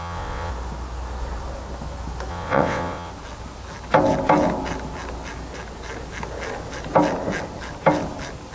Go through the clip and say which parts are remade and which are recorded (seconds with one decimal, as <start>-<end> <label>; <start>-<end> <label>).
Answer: 0.0-0.5 remade; 0.5-2.3 recorded; 2.3-3.1 remade; 3.1-8.5 recorded

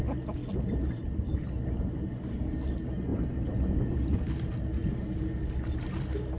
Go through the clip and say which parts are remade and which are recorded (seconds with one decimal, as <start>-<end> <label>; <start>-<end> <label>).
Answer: 0.0-6.4 recorded

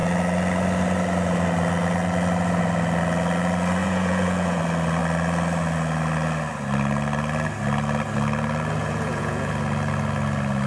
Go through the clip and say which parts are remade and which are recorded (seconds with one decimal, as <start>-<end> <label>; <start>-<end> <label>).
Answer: 0.0-3.8 recorded; 3.8-4.6 remade; 4.6-8.8 recorded; 8.8-9.5 remade; 9.5-10.7 recorded

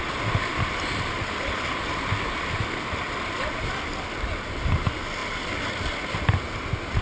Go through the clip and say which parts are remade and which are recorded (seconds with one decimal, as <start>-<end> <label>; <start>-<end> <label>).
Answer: 0.0-7.0 recorded

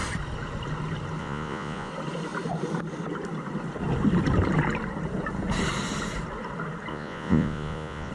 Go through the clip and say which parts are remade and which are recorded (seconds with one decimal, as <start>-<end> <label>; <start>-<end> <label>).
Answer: 0.0-1.2 recorded; 1.2-1.9 remade; 1.9-6.9 recorded; 6.9-8.1 remade

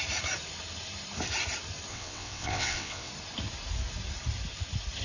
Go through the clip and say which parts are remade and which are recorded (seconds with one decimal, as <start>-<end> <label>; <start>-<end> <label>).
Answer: 0.0-1.9 recorded; 1.9-3.1 remade; 3.1-5.0 recorded

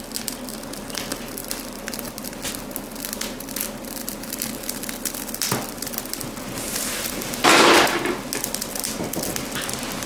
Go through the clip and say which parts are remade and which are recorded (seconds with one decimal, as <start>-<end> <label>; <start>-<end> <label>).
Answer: 0.0-1.4 recorded; 1.4-2.5 remade; 2.5-4.0 recorded; 4.0-4.8 remade; 4.8-10.1 recorded